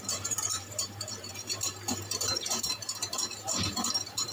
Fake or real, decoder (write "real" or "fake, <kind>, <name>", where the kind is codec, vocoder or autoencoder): fake, vocoder, BigVGAN v2